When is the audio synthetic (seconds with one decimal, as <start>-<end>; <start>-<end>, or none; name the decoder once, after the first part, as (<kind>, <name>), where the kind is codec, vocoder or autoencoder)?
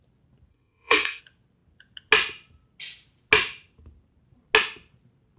0.5-1.2 (codec, SNAC)